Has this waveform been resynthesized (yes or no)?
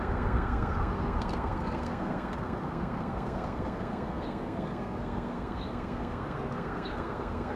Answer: yes